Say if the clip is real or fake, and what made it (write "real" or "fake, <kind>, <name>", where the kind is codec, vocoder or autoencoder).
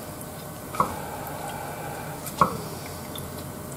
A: real